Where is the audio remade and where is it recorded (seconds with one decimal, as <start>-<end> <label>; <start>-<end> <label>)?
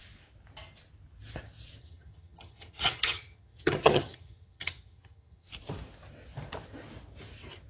0.0-1.8 recorded; 1.8-5.5 remade; 5.5-7.7 recorded